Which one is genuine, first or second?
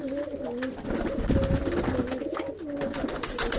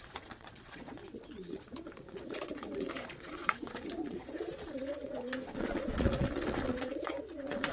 first